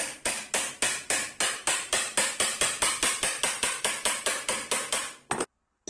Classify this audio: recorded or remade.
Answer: recorded